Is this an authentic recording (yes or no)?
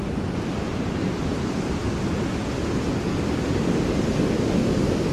yes